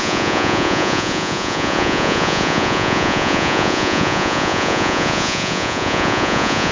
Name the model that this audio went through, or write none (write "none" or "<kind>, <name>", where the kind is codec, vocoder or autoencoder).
vocoder, Vocos